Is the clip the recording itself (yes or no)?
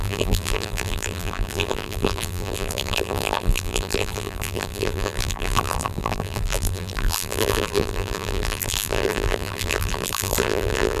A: no